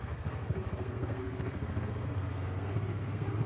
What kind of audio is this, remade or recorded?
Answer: remade